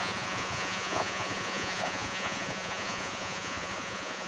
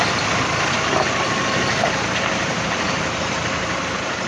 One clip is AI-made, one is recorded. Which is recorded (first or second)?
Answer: second